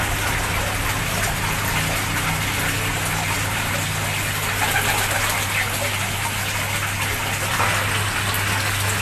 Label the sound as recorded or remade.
recorded